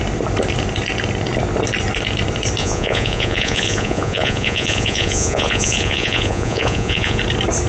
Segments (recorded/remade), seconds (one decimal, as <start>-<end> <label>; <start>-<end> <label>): 0.0-2.6 recorded; 2.6-7.2 remade; 7.2-7.7 recorded